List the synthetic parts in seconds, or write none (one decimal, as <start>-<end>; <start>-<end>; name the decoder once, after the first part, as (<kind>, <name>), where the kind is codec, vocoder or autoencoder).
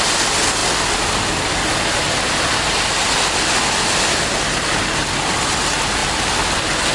none